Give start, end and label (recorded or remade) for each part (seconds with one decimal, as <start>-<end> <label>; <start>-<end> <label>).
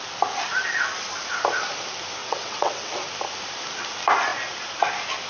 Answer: 0.0-2.2 recorded; 2.2-2.9 remade; 2.9-5.3 recorded